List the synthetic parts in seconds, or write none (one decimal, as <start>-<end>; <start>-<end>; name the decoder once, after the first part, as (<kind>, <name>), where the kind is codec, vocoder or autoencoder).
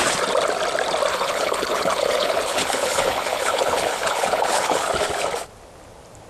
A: 1.1-4.9 (codec, HILCodec)